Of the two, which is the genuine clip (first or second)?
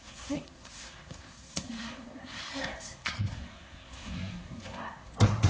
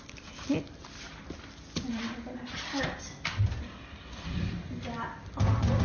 second